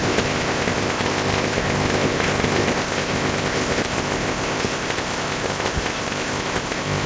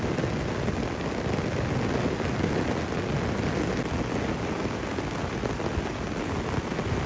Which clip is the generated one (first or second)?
first